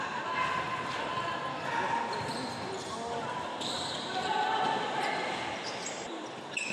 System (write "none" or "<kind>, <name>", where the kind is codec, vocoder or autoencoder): none